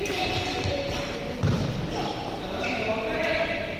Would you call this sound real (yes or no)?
yes